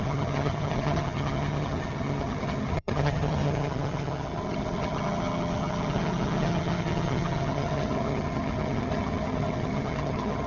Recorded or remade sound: remade